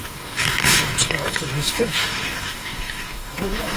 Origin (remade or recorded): remade